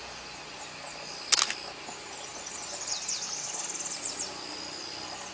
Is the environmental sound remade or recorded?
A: recorded